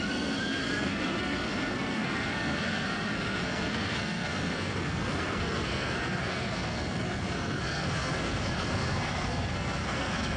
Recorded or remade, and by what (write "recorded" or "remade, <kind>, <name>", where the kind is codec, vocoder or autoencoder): remade, codec, SNAC